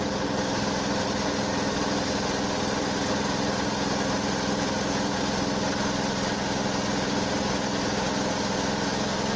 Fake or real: real